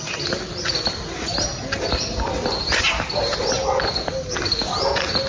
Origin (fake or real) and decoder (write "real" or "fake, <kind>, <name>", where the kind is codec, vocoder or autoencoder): real